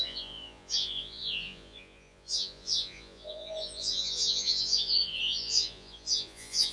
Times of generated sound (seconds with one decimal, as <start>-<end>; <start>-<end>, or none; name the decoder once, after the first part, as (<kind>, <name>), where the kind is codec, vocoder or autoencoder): 0.0-6.7 (vocoder, Vocos)